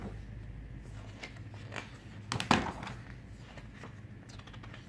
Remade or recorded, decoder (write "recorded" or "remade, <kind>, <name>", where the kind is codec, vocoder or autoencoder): recorded